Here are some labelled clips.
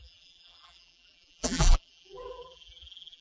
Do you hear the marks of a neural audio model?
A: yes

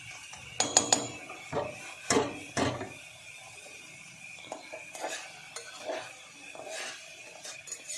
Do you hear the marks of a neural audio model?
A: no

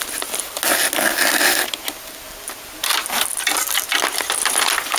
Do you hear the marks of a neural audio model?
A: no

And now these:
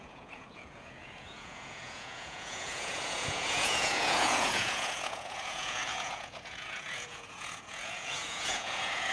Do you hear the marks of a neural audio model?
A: yes